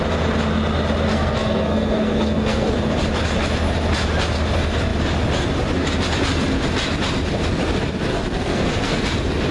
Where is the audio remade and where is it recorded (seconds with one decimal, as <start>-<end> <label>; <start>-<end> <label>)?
0.0-1.1 recorded; 1.1-2.7 remade; 2.7-8.1 recorded; 8.1-9.0 remade; 9.0-9.5 recorded

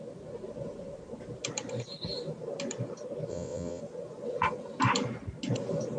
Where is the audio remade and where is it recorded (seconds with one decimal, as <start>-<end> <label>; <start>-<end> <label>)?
0.0-3.3 recorded; 3.3-3.8 remade; 3.8-6.0 recorded

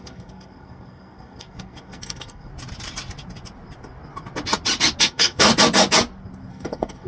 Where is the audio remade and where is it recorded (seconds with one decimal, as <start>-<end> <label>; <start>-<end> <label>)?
0.0-2.5 remade; 2.5-5.0 recorded; 5.0-5.5 remade; 5.5-6.5 recorded; 6.5-7.1 remade

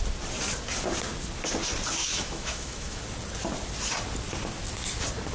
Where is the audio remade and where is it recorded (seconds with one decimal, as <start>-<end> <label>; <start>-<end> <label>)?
0.0-2.0 recorded; 2.0-3.0 remade; 3.0-5.3 recorded

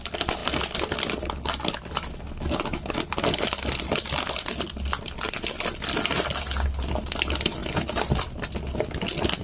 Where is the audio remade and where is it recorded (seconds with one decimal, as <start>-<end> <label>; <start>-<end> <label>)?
0.0-9.4 recorded

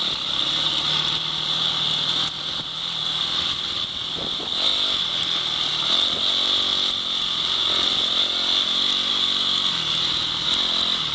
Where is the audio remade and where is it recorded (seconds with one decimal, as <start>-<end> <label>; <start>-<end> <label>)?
0.0-11.1 recorded